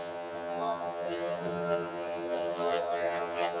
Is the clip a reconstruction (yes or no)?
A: yes